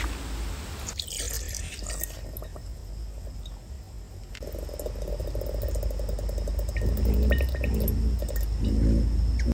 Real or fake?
real